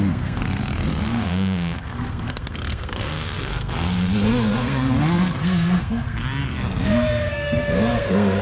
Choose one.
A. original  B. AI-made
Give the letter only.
B